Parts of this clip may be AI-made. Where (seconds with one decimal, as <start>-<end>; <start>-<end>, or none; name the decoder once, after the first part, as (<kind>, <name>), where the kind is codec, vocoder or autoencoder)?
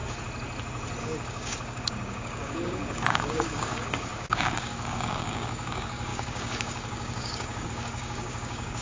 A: 1.0-8.8 (codec, DAC)